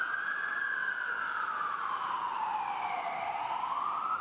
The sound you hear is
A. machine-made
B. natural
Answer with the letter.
B